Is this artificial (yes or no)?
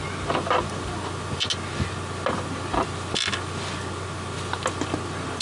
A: no